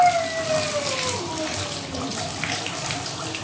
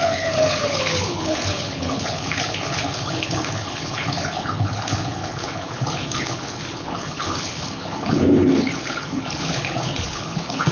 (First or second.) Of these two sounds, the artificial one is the second